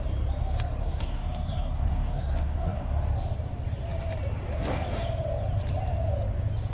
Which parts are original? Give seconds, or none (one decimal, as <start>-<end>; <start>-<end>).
0.0-0.8; 2.9-6.7